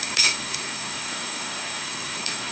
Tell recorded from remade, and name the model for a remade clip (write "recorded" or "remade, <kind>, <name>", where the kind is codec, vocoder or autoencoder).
remade, codec, SNAC